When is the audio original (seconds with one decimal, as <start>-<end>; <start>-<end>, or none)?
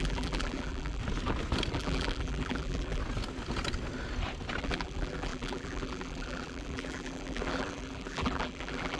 1.0-1.7; 3.0-4.6